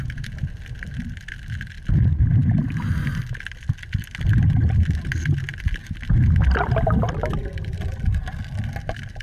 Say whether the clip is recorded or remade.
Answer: recorded